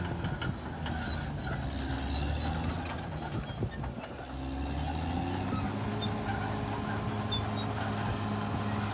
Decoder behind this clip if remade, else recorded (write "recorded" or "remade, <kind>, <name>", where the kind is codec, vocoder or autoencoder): recorded